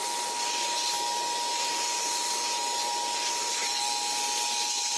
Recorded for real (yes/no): yes